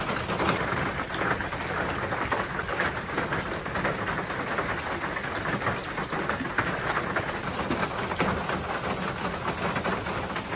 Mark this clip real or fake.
real